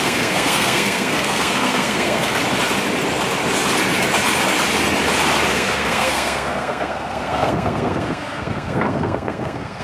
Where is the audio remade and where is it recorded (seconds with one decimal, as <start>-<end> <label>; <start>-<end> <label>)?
0.0-2.4 remade; 2.4-5.5 recorded; 5.5-9.8 remade